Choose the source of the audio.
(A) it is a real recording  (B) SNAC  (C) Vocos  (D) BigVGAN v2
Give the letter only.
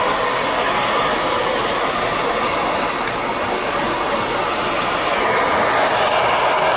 A